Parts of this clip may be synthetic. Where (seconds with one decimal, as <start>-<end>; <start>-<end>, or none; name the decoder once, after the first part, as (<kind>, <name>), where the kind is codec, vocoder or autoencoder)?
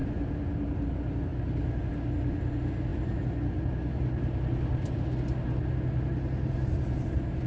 none